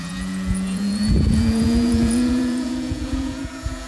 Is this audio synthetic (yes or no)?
yes